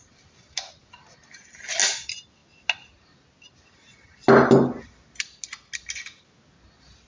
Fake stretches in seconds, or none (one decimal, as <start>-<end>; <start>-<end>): none